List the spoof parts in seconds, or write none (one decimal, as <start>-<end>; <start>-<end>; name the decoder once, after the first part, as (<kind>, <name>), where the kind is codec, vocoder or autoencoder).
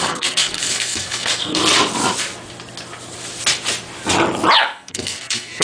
0.0-1.6 (codec, SNAC); 4.6-5.6